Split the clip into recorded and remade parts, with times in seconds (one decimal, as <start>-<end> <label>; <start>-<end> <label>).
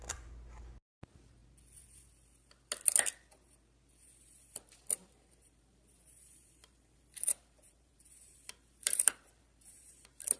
0.0-5.0 recorded; 5.0-9.9 remade; 9.9-10.4 recorded